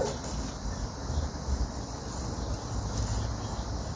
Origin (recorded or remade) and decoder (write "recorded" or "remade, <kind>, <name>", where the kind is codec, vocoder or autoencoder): recorded